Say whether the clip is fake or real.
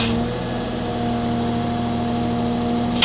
real